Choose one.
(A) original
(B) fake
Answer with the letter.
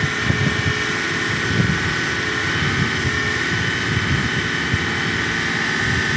A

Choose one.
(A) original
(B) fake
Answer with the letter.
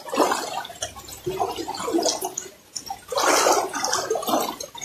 A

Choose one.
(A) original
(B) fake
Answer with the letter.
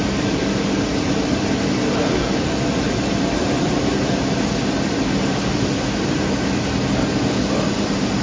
A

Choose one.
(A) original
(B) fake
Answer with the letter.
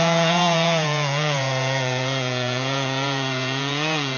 B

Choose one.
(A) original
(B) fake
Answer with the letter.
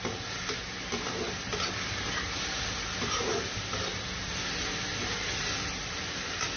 A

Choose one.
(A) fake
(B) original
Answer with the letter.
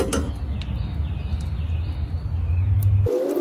B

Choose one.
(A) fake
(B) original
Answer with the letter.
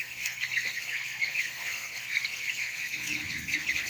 A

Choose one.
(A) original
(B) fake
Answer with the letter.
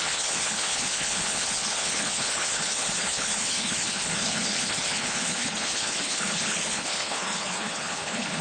B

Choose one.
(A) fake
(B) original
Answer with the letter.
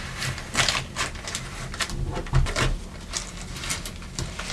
B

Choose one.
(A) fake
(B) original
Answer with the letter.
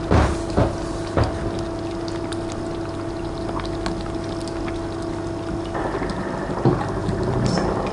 B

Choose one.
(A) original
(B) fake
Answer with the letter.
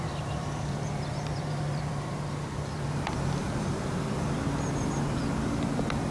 B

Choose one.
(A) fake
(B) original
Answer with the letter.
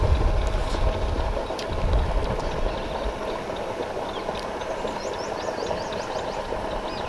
B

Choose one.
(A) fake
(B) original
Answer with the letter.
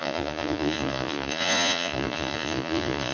A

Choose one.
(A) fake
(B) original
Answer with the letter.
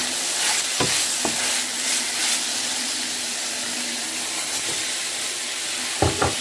B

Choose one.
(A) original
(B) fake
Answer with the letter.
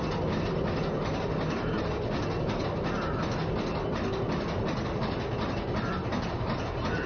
A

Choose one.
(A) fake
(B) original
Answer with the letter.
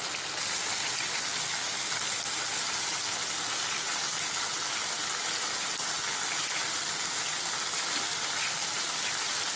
B